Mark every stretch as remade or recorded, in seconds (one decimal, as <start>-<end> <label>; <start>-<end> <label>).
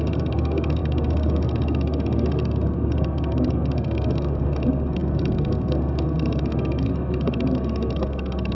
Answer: 0.0-8.5 remade